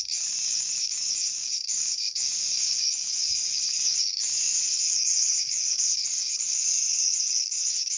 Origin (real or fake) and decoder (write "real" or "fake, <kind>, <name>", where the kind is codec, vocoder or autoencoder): fake, codec, DAC